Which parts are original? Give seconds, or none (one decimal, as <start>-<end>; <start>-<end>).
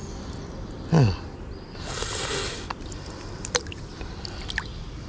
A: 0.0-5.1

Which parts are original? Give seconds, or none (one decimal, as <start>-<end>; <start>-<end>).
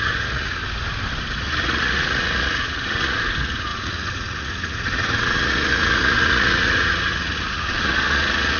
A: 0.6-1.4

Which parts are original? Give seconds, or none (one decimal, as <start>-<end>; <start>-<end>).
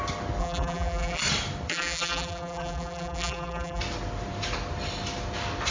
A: 0.0-0.4; 1.2-1.7; 3.8-5.7